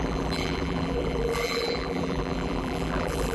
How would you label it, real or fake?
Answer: fake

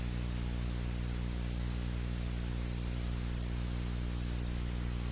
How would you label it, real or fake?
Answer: real